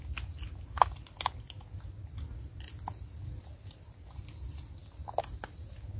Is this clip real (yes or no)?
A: yes